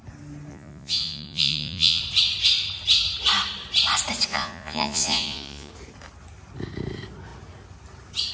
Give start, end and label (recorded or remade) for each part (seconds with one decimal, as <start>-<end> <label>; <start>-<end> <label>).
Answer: 0.0-0.5 recorded; 0.5-2.0 remade; 2.0-4.3 recorded; 4.3-5.7 remade; 5.7-8.3 recorded